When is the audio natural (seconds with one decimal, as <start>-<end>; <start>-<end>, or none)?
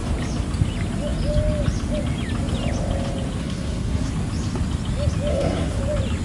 0.0-3.4; 4.1-5.3; 5.8-6.2